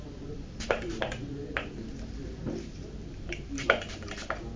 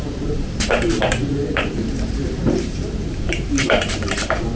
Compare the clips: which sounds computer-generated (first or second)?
second